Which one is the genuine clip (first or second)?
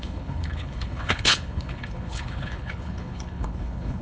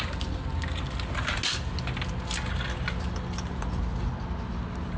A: second